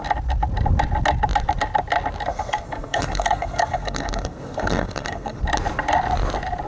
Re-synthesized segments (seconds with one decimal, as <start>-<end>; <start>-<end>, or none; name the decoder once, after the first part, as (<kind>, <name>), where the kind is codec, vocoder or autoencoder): 2.3-5.4 (codec, SNAC)